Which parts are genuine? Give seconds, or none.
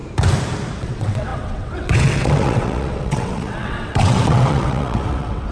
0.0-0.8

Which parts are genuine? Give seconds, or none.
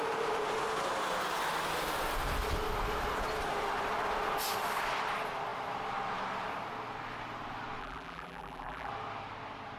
0.0-7.8; 8.9-9.8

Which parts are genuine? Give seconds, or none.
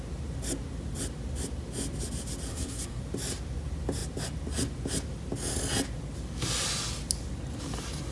0.0-2.5; 3.0-8.1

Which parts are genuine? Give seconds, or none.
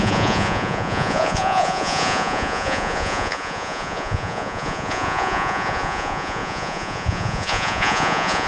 none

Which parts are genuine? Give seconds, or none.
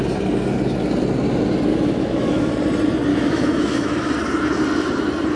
0.0-1.7; 2.5-3.1; 4.1-5.4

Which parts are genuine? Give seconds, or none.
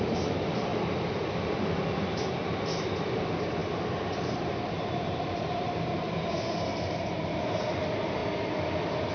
8.2-9.1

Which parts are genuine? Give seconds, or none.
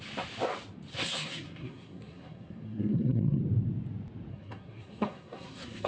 0.0-0.9; 3.4-4.3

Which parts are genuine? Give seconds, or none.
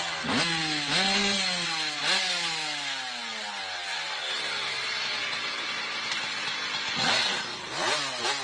0.0-8.4